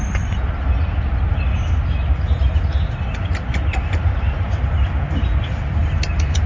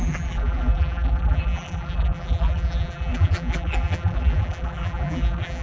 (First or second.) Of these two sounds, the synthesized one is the second